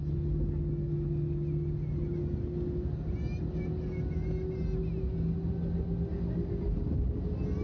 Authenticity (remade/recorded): recorded